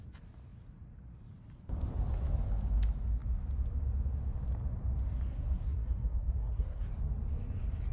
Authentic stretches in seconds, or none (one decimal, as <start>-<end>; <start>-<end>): 0.0-5.3; 6.9-7.9